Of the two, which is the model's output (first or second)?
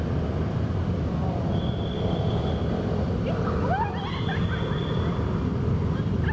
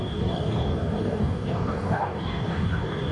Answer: second